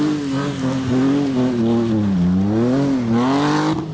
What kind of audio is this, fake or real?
real